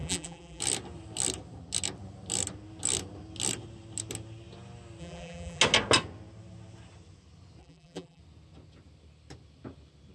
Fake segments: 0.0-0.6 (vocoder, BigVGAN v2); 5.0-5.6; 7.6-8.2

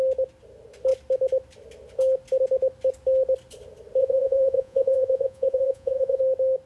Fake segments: 4.0-6.2 (vocoder, Vocos)

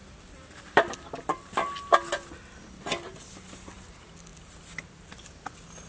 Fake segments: 0.0-0.9 (vocoder, BigVGAN v2)

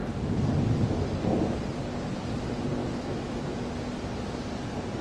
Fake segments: 2.8-3.7 (autoencoder, DAC-VAE)

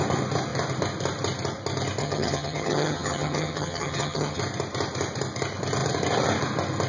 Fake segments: 2.0-4.4 (vocoder, HiFi-GAN)

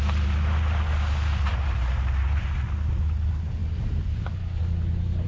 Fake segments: 1.5-2.5 (vocoder, BigVGAN v2); 3.6-4.6

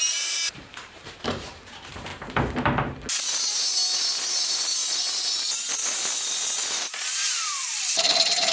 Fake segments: 0.0-2.1 (vocoder, BigVGAN v2); 3.2-3.7; 4.3-4.8; 6.9-8.5